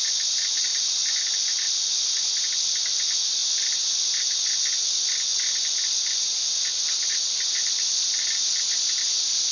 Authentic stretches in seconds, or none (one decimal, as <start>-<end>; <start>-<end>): 0.0-9.5